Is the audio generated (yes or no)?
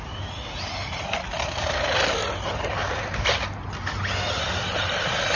no